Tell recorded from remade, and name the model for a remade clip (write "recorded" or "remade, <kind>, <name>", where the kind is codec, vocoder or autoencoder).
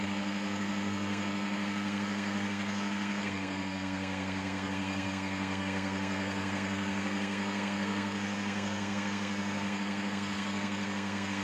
remade, codec, SNAC